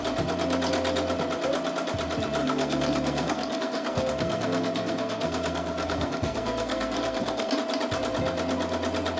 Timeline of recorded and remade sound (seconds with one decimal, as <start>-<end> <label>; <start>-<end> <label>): 0.0-2.4 recorded; 2.4-7.5 remade; 7.5-9.2 recorded